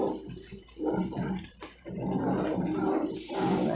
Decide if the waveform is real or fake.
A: fake